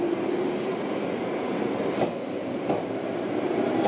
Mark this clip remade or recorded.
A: recorded